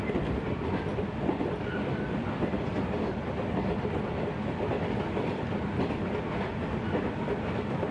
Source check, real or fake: real